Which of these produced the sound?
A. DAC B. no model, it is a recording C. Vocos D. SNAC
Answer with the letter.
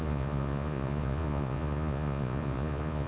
C